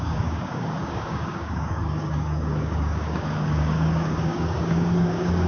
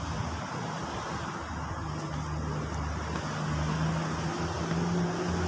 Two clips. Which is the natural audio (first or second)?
second